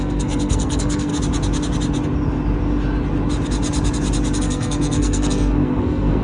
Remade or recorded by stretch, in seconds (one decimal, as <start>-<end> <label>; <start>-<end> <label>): 0.0-1.1 remade; 1.1-4.4 recorded; 4.4-6.2 remade